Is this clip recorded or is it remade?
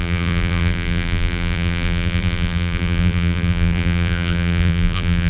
remade